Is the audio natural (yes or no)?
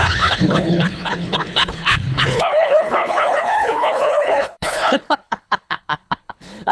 no